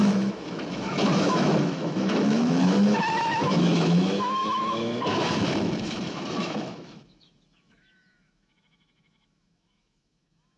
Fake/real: fake